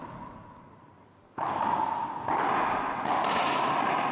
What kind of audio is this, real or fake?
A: real